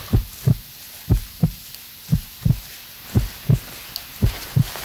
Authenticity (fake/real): real